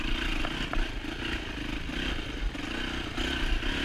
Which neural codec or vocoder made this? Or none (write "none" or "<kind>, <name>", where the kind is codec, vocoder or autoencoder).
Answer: none